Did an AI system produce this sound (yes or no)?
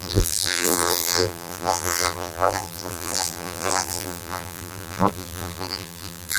yes